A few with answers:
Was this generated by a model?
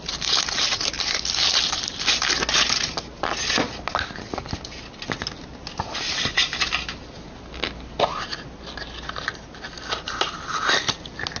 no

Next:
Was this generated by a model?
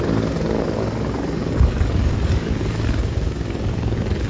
yes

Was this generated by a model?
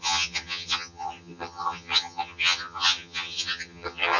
yes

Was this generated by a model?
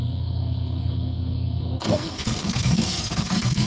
yes